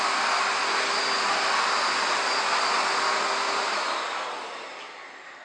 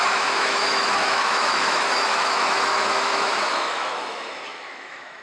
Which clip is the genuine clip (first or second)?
first